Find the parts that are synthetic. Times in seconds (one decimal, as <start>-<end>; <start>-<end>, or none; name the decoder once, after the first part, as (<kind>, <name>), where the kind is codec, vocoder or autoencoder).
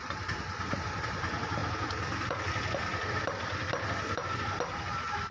none